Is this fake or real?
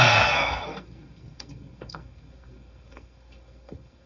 fake